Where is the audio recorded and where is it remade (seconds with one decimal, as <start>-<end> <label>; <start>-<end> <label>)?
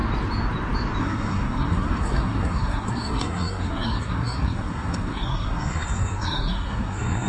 0.0-1.0 recorded; 1.0-7.3 remade